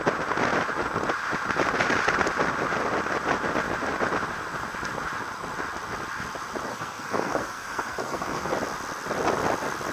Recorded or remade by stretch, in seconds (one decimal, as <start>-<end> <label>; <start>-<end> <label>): 0.0-6.7 recorded; 6.7-8.5 remade; 8.5-9.9 recorded